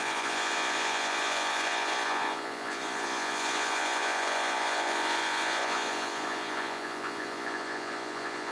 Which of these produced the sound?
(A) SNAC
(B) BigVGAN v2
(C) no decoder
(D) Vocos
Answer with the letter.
D